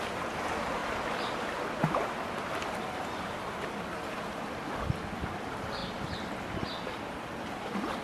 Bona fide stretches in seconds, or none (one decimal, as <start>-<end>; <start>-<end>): 0.0-8.0